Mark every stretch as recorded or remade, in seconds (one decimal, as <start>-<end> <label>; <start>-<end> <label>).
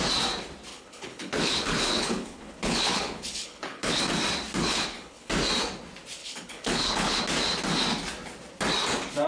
0.0-0.7 recorded; 0.7-4.0 remade; 4.0-4.6 recorded; 4.6-5.3 remade; 5.3-6.2 recorded; 6.2-7.2 remade; 7.2-9.3 recorded